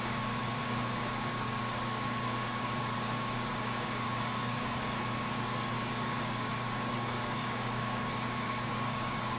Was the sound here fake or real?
fake